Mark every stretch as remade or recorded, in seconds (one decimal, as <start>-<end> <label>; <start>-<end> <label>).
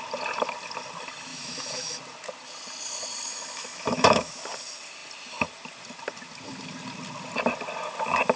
0.0-1.3 recorded; 1.3-2.0 remade; 2.0-3.3 recorded; 3.3-4.3 remade; 4.3-8.4 recorded